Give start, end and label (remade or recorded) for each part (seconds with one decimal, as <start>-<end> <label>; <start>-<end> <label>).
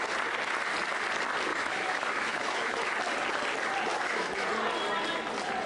0.0-1.5 recorded; 1.5-2.9 remade; 2.9-3.9 recorded; 3.9-4.5 remade; 4.5-5.7 recorded